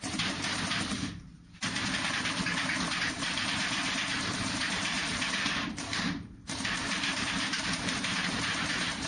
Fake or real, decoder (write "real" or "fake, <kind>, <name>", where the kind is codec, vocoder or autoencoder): fake, vocoder, BigVGAN v2